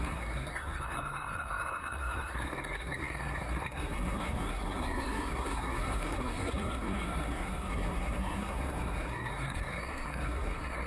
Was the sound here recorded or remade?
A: remade